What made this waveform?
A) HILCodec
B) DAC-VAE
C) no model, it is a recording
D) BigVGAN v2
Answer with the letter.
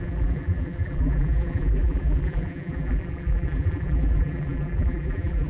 D